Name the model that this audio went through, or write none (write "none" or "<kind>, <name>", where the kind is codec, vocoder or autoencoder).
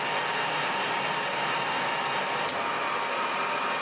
none